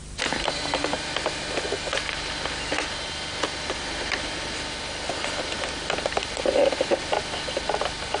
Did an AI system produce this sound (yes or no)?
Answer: yes